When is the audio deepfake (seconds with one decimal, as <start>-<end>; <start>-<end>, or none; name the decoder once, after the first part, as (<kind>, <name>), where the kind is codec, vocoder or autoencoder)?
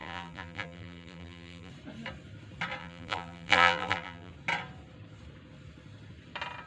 0.0-1.7 (vocoder, BigVGAN v2); 2.8-4.3